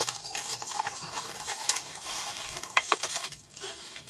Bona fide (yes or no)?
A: no